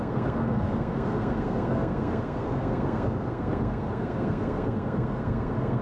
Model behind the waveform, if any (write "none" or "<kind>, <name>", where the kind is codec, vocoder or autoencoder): codec, SNAC